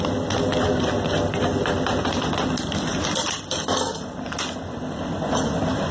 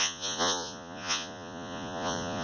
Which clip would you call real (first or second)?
first